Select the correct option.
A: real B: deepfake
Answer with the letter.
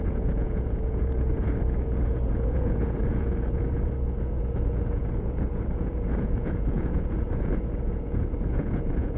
B